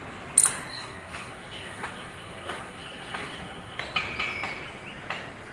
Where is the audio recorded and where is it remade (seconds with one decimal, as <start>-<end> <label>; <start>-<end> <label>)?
0.0-0.7 recorded; 0.7-3.8 remade; 3.8-5.5 recorded